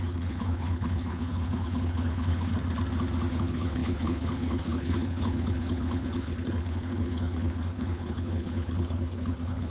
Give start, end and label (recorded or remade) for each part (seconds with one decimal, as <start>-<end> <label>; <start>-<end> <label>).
0.0-2.5 remade; 2.5-3.3 recorded; 3.3-9.7 remade